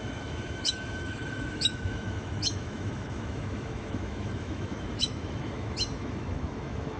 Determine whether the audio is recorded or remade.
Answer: remade